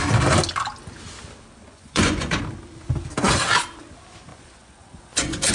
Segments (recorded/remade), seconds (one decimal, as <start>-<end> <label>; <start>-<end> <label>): 0.0-1.7 recorded; 1.7-2.4 remade; 2.4-4.3 recorded; 4.3-5.5 remade